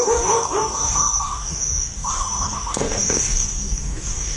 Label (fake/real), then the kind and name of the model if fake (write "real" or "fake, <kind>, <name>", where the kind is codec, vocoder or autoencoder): fake, codec, DAC